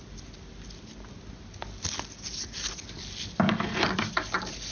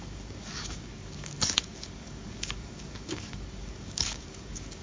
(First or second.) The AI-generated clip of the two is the second